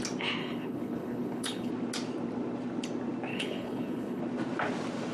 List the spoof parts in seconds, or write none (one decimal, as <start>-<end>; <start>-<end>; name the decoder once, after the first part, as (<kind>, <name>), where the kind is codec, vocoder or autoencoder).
0.4-1.7 (codec, HILCodec); 3.3-4.2